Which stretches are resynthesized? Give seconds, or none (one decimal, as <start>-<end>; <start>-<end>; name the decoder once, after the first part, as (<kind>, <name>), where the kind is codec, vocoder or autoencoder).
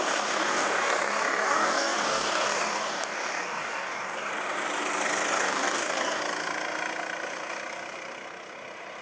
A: 0.0-4.3 (codec, DAC); 5.4-6.2